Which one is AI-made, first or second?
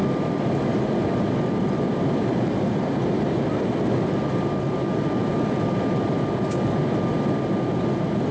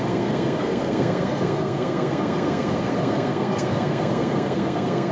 second